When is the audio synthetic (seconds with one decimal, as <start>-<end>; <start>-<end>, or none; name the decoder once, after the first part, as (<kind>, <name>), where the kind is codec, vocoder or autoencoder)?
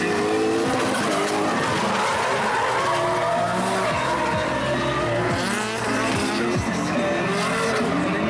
none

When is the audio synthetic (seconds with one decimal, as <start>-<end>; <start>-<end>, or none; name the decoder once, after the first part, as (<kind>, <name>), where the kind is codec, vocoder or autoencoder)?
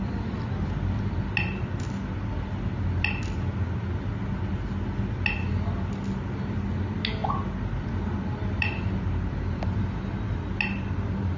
none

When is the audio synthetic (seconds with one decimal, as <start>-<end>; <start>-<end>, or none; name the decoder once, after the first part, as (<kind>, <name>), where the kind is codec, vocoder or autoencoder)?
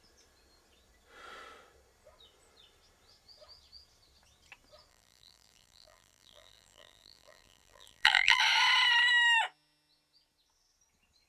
4.9-8.4 (vocoder, BigVGAN v2)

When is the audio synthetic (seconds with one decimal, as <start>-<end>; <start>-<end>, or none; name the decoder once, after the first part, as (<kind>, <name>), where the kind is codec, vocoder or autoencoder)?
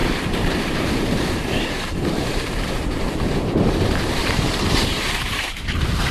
0.0-6.1 (vocoder, BigVGAN v2)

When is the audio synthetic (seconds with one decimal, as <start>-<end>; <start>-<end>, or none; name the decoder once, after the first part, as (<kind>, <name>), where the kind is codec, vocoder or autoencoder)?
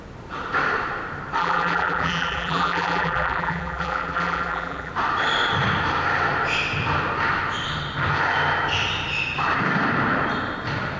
1.4-4.9 (vocoder, BigVGAN v2)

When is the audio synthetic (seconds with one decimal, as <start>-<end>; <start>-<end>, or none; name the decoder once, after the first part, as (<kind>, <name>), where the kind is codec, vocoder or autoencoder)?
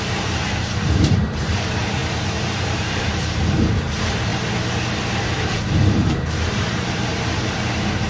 0.0-4.3 (vocoder, BigVGAN v2); 5.1-7.1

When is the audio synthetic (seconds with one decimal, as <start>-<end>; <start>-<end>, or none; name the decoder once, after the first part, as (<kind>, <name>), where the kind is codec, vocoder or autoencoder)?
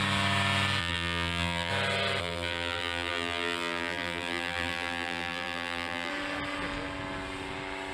0.8-1.7 (vocoder, BigVGAN v2); 2.2-6.1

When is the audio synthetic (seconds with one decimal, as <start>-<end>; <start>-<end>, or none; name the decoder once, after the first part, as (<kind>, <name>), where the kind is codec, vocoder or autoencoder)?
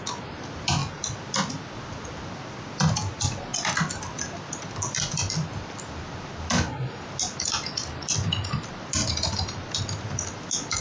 none